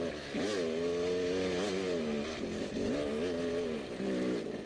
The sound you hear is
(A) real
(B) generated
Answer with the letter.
A